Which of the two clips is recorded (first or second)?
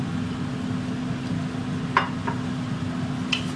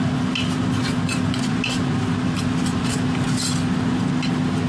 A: first